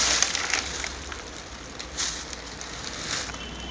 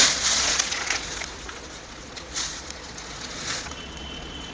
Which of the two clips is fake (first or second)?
second